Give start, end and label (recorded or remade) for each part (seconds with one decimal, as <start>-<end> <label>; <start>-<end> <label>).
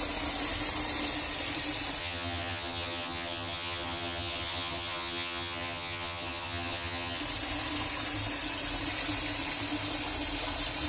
0.0-2.0 recorded; 2.0-7.2 remade; 7.2-10.9 recorded